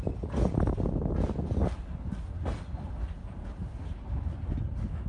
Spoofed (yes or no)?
no